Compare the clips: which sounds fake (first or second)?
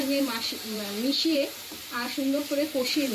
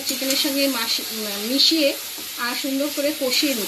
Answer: first